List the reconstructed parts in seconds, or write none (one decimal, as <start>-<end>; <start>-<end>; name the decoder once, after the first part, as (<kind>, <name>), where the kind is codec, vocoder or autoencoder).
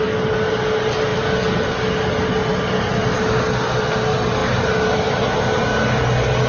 none